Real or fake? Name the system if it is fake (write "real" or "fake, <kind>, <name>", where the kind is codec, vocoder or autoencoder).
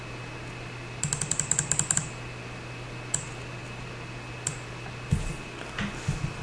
real